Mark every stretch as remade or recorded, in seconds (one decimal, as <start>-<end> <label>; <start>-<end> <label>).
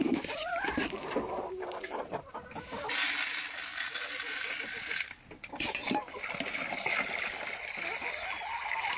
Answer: 0.0-9.0 recorded